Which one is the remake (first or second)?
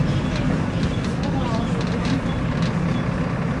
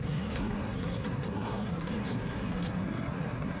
second